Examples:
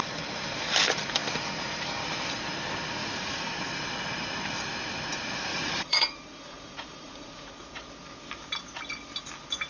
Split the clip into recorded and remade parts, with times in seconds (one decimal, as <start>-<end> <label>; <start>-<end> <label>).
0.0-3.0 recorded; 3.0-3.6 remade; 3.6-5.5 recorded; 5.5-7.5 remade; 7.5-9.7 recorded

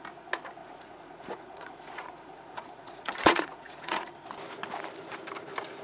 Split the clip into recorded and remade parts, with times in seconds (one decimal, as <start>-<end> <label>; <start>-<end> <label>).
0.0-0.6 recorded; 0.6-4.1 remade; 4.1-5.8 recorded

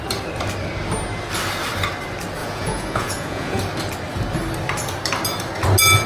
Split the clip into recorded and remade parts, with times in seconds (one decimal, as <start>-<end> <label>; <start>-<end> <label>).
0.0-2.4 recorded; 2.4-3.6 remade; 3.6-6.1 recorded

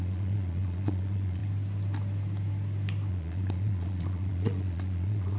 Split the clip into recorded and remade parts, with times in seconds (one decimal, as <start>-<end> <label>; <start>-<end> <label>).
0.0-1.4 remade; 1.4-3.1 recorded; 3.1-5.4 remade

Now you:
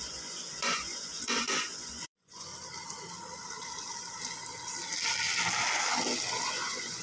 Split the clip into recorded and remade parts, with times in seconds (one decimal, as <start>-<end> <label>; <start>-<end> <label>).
0.0-2.5 remade; 2.5-6.5 recorded; 6.5-7.0 remade

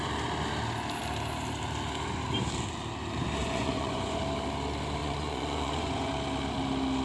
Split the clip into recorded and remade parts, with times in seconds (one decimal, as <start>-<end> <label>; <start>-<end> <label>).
0.0-3.4 recorded; 3.4-4.2 remade; 4.2-5.0 recorded; 5.0-6.1 remade; 6.1-7.0 recorded